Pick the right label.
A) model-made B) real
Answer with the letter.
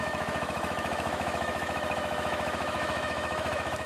A